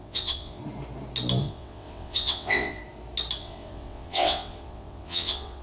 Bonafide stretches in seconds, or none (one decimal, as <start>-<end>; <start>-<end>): 0.6-1.4; 2.8-3.4